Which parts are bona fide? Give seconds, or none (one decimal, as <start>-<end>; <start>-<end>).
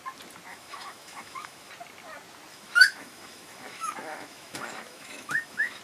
0.0-0.5; 1.7-2.5